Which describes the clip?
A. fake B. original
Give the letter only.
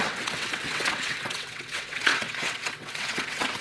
A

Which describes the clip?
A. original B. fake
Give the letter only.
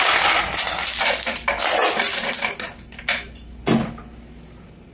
A